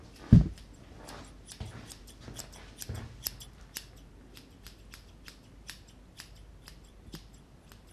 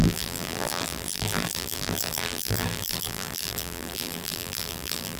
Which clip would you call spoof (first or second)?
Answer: second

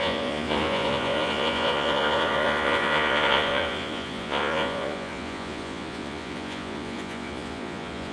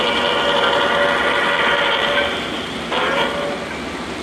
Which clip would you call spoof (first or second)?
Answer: first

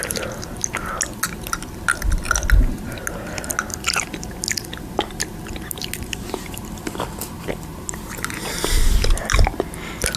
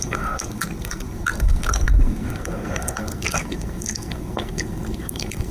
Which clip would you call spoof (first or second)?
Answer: second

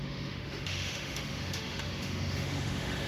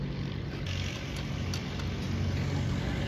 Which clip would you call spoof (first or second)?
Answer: first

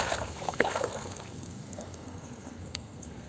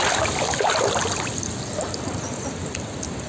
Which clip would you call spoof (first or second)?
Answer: first